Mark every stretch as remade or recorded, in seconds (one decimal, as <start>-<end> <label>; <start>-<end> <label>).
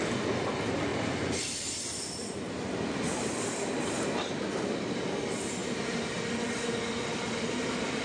0.0-0.9 recorded; 0.9-4.3 remade; 4.3-5.6 recorded; 5.6-6.2 remade; 6.2-7.1 recorded; 7.1-8.0 remade